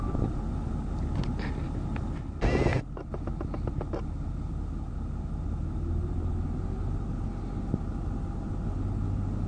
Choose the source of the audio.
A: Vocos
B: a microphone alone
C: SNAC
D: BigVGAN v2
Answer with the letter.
B